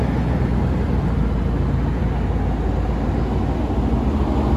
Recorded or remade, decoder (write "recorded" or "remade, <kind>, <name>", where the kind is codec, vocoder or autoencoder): recorded